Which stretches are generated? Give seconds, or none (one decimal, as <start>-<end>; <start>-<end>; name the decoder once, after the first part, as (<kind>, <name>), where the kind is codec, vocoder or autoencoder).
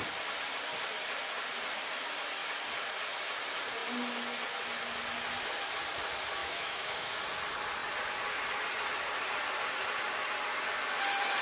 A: 6.4-7.2 (autoencoder, DAC-VAE)